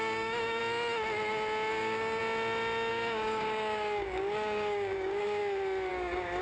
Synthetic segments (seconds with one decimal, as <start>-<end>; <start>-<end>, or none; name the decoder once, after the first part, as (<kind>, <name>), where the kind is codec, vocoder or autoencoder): 0.0-0.6 (codec, DAC); 1.7-2.2; 2.9-5.4; 5.9-6.4

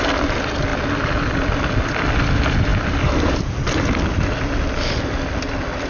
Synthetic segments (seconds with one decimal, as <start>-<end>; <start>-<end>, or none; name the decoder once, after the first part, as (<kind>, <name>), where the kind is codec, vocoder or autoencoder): none

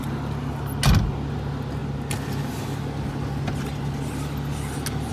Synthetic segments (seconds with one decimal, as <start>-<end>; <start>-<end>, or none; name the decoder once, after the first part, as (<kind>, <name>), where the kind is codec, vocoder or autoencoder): none